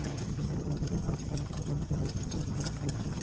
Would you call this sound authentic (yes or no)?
no